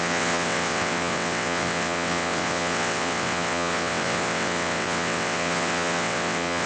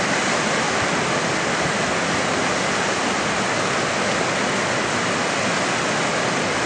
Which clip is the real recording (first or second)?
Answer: second